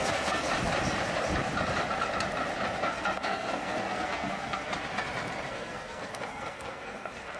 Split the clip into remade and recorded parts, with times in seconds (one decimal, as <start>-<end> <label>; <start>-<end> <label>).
0.0-0.5 remade; 0.5-2.8 recorded; 2.8-4.7 remade; 4.7-5.5 recorded; 5.5-7.4 remade